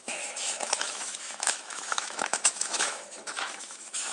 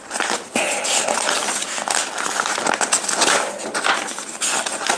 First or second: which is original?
second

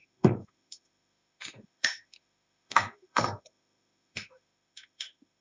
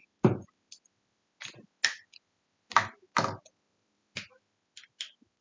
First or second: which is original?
second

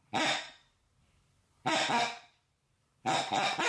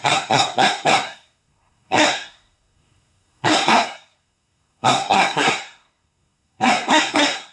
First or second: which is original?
first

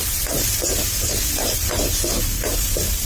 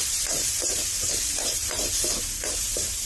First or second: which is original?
first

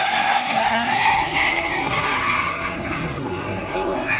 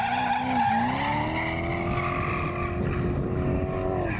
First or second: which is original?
second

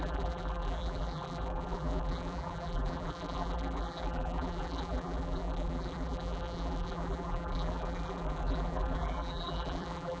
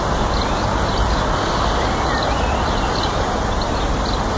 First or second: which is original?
second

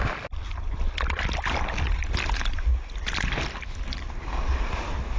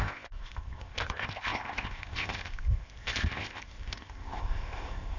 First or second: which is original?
first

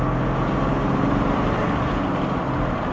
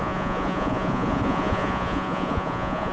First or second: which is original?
first